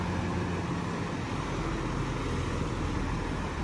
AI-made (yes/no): no